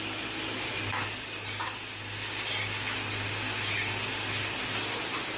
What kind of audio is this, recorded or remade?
recorded